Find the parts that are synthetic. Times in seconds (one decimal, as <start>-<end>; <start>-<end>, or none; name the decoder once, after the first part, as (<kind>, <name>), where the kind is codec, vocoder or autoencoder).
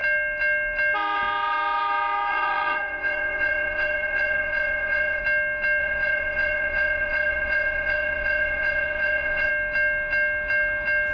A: 2.3-5.2 (vocoder, WaveNeXt); 5.8-9.5